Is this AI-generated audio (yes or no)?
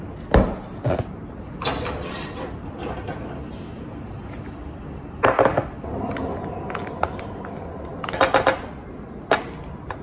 no